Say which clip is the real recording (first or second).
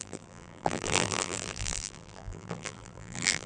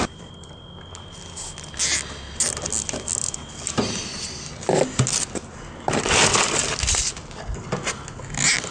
second